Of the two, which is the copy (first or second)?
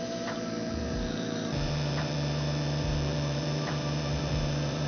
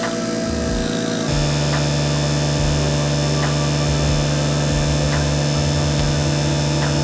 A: first